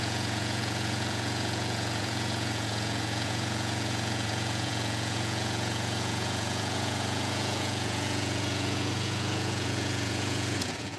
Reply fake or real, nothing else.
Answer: fake